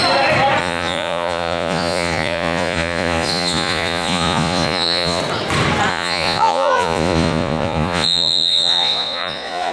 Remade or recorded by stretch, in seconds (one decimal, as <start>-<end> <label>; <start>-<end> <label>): 0.0-0.6 recorded; 0.6-5.2 remade; 5.2-5.9 recorded; 5.9-9.7 remade